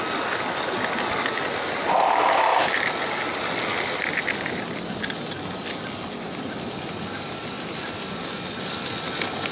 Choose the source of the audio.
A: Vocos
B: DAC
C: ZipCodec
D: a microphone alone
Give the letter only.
D